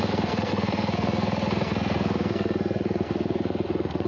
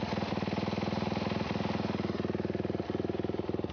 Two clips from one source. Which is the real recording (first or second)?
second